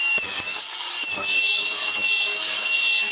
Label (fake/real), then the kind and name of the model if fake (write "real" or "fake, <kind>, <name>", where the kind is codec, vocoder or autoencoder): fake, codec, DAC